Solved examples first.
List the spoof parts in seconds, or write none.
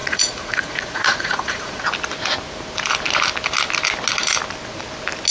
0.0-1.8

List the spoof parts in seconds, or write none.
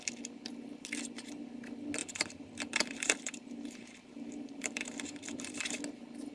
2.0-5.8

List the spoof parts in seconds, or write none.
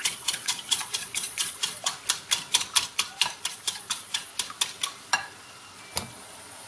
0.0-1.9; 3.5-4.3